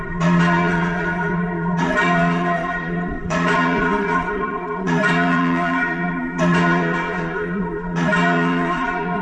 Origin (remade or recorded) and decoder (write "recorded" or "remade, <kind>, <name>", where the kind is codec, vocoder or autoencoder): remade, vocoder, Vocos